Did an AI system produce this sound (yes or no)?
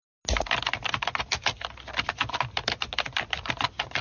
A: no